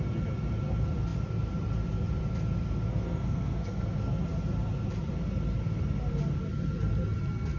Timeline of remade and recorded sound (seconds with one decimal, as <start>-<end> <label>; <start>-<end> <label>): 0.0-2.9 recorded; 2.9-4.2 remade; 4.2-7.6 recorded